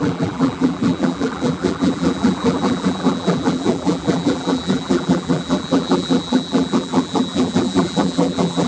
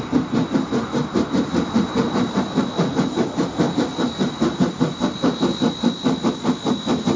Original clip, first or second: second